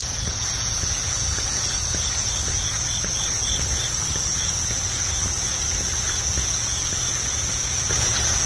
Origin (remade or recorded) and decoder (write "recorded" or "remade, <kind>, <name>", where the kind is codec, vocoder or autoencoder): remade, vocoder, Vocos